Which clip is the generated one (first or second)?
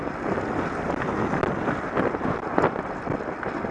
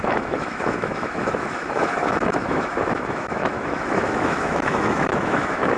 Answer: second